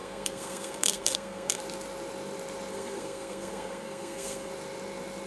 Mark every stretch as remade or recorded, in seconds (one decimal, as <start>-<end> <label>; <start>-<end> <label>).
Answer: 0.0-1.6 remade; 1.6-2.7 recorded; 2.7-4.5 remade; 4.5-5.3 recorded